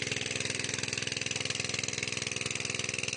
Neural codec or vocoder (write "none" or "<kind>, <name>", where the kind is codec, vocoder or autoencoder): none